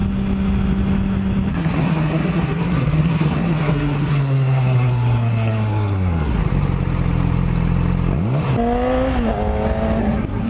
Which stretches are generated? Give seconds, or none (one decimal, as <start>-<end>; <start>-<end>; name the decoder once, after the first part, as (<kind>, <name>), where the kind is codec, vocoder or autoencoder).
1.5-6.4 (codec, SNAC); 10.0-10.5